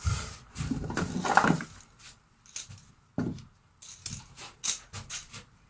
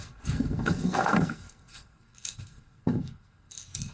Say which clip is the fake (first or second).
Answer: second